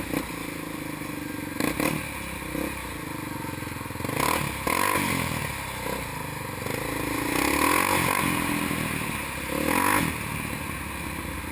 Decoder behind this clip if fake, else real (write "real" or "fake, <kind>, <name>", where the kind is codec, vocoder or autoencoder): real